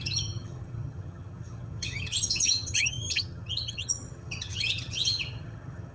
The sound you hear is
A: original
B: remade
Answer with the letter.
B